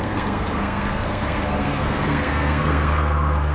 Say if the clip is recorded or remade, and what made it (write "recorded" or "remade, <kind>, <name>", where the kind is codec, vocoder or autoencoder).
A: remade, codec, SNAC